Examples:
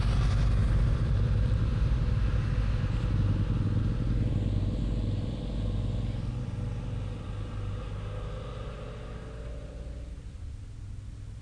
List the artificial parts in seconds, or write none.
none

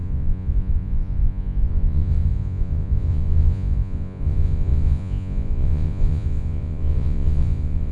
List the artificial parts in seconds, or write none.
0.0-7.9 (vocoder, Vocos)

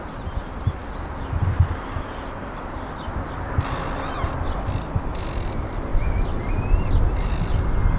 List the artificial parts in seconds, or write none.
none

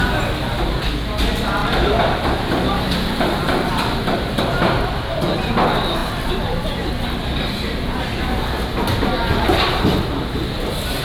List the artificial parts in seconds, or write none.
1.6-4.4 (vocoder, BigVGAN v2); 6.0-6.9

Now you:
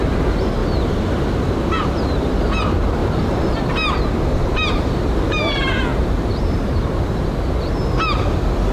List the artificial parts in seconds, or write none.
3.0-3.7 (vocoder, BigVGAN v2); 5.9-7.7

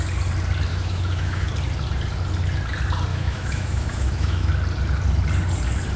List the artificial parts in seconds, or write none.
0.7-1.5 (autoencoder, DAC-VAE); 3.1-4.5